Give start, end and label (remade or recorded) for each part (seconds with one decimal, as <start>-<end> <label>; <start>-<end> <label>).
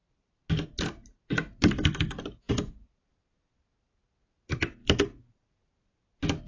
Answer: 0.0-3.1 remade; 3.1-4.8 recorded; 4.8-5.9 remade; 5.9-6.5 recorded